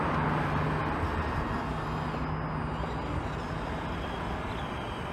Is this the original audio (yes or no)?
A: yes